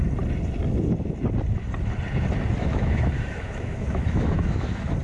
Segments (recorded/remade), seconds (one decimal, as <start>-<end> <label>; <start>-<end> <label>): 0.0-2.6 recorded; 2.6-5.0 remade